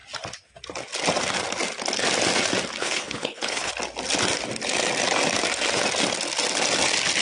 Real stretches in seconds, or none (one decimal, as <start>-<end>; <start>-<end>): 0.0-2.8; 3.7-7.2